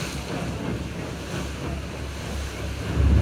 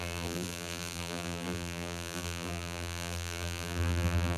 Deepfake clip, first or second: second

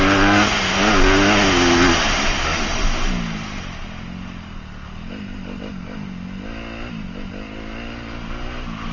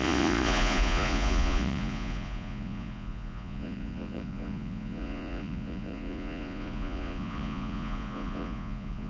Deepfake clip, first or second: second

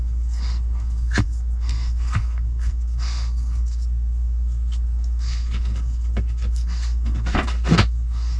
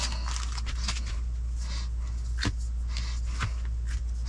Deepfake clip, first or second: first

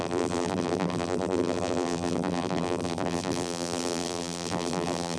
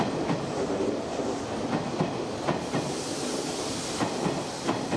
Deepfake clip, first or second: first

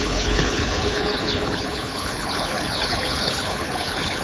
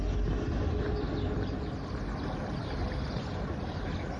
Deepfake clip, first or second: first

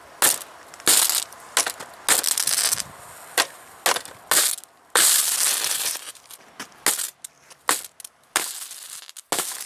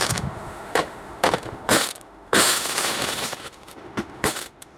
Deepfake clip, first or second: second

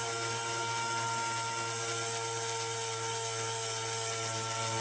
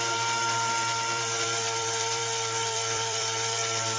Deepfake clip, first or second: second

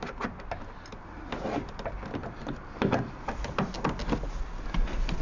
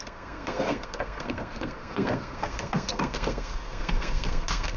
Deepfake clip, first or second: second